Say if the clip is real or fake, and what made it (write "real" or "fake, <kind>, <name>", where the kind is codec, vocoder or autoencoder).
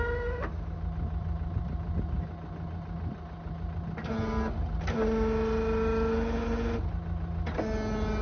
real